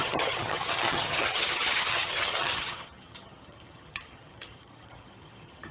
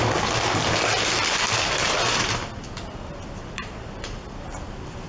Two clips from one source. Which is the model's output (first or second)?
first